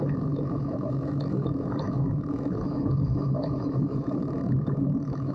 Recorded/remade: remade